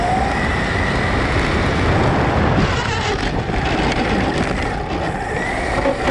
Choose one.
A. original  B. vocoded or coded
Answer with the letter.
A